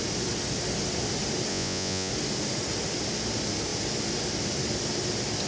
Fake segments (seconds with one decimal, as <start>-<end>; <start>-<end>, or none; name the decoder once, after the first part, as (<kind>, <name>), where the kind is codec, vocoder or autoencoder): 1.5-2.1 (vocoder, Vocos)